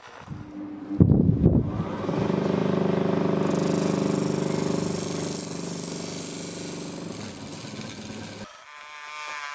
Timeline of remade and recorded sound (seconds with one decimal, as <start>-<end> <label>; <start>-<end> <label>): 0.0-9.5 recorded